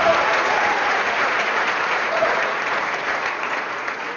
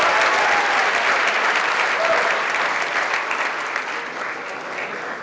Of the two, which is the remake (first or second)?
first